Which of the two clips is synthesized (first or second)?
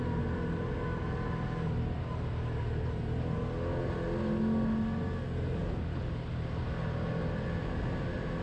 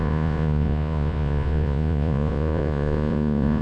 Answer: second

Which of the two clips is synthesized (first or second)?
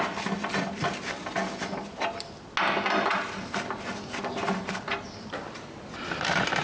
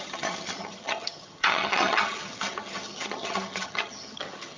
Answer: second